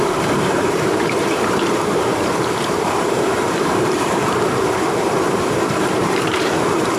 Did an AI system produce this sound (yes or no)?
yes